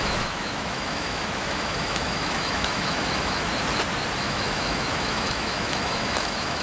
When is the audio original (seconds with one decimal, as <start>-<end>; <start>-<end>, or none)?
3.5-4.2